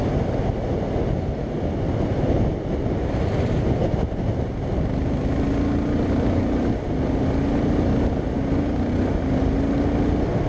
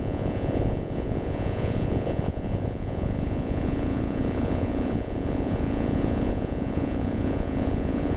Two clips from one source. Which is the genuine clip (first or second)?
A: first